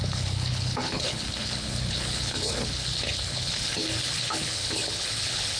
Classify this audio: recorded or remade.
remade